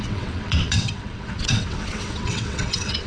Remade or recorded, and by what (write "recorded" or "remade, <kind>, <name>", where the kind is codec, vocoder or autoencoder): remade, vocoder, WaveNeXt